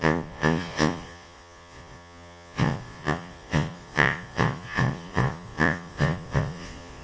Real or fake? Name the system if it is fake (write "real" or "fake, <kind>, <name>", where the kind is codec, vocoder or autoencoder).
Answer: fake, vocoder, Vocos